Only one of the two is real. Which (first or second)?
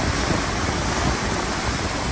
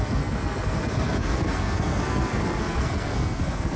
first